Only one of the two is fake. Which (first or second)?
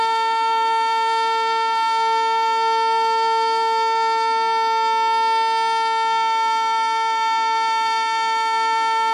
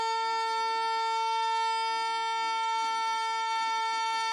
second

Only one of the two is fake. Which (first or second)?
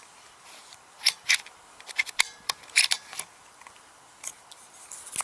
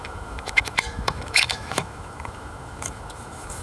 second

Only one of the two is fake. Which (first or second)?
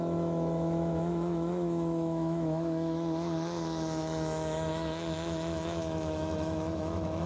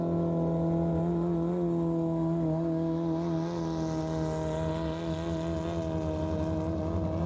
first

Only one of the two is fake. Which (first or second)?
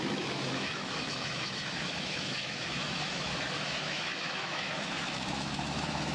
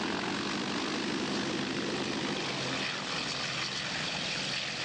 first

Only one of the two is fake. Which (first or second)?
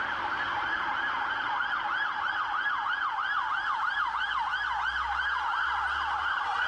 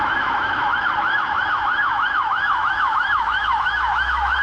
second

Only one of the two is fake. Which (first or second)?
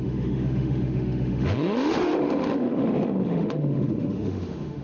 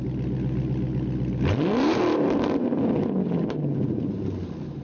first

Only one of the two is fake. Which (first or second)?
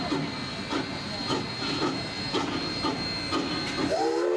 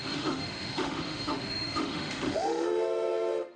second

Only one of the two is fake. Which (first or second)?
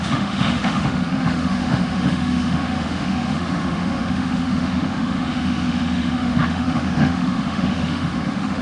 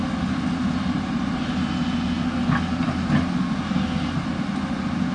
first